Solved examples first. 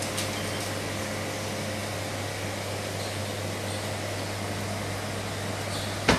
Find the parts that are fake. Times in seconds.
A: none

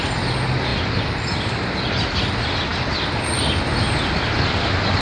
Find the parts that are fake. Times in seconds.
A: none